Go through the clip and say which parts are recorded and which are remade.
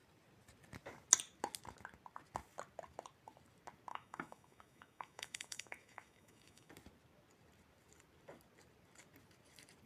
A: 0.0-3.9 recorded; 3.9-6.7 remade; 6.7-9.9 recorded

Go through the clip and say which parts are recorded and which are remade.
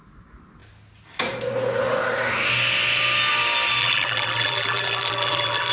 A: 0.0-3.8 recorded; 3.8-5.7 remade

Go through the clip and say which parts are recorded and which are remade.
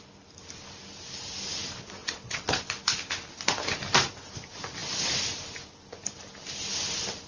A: 0.0-2.0 recorded; 2.0-2.6 remade; 2.6-7.3 recorded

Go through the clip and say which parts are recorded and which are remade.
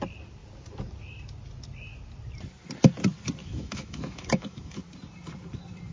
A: 0.0-3.4 recorded; 3.4-4.8 remade; 4.8-5.9 recorded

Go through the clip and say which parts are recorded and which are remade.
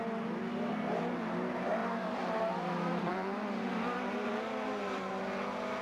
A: 0.0-1.8 recorded; 1.8-5.1 remade; 5.1-5.8 recorded